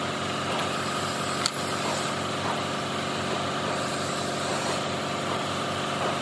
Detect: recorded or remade recorded